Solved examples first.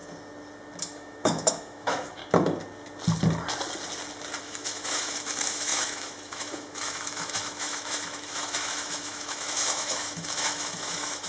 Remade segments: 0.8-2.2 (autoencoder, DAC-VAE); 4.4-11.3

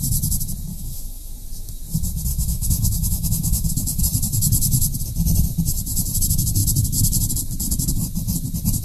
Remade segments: 0.7-1.3 (autoencoder, DAC-VAE); 2.3-4.0